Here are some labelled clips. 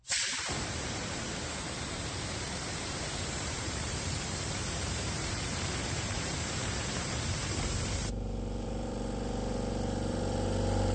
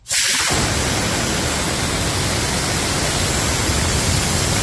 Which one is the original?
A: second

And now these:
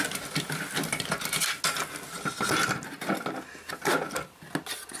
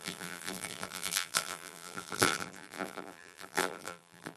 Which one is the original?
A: first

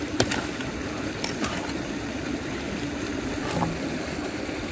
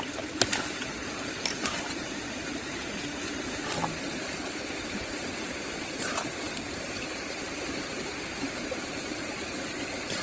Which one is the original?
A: first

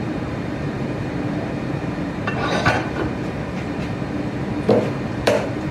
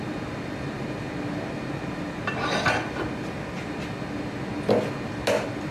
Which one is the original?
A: second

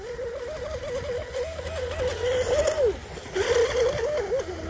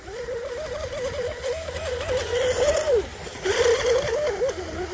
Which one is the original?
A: first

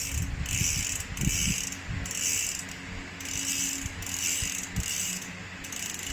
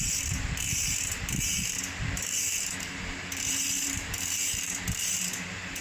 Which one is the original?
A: first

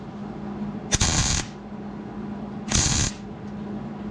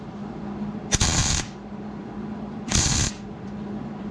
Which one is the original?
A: first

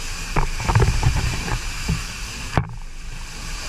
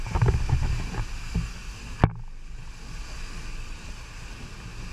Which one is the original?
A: second